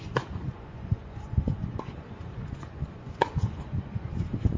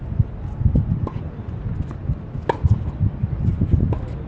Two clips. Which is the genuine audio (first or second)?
second